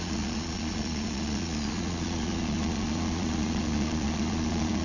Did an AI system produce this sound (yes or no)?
yes